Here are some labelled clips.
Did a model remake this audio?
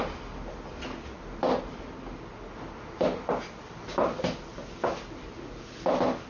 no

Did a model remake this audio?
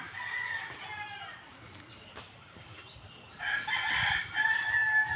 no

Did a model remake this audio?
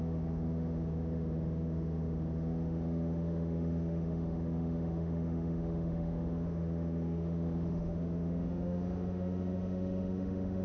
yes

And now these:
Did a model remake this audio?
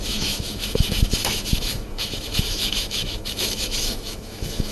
yes